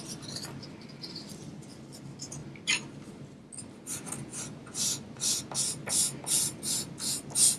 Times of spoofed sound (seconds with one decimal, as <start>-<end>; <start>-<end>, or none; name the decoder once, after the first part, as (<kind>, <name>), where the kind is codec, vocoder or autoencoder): 4.3-5.4 (vocoder, Vocos)